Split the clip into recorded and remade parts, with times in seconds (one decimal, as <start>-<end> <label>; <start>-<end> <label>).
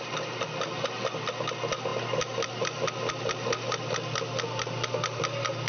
0.0-5.7 recorded